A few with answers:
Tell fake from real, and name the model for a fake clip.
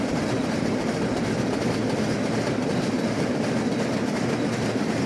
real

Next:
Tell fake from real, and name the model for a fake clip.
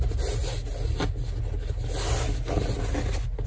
real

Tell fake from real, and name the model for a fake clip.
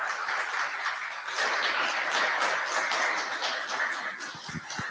real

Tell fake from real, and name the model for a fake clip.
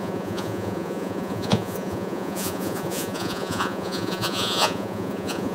fake, vocoder, Vocos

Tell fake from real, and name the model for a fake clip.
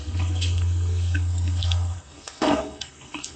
fake, codec, SNAC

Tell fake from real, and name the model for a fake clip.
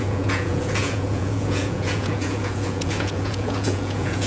fake, vocoder, Vocos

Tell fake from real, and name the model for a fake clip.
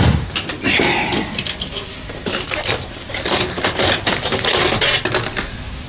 real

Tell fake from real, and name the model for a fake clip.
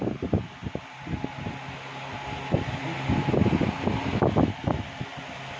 real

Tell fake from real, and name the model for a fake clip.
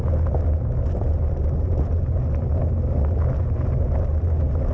real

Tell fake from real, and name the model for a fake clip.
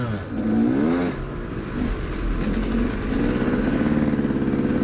real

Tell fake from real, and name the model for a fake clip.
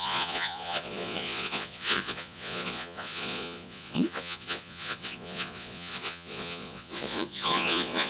fake, vocoder, Vocos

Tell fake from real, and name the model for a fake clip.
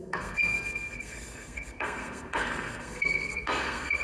fake, codec, SNAC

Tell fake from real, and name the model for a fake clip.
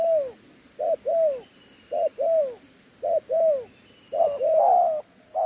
real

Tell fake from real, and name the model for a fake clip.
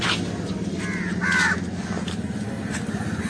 real